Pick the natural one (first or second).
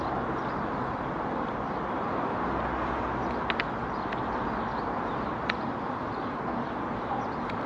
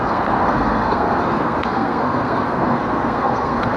first